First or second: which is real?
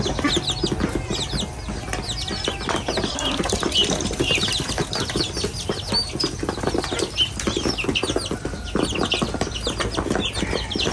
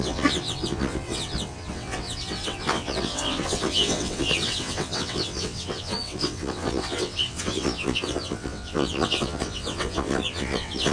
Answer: first